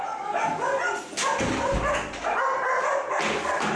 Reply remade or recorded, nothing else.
recorded